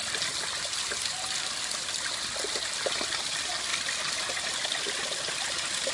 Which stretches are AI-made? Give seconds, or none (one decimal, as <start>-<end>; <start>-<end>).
none